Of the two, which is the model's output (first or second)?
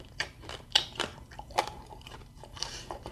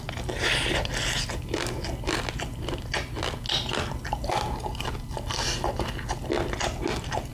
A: first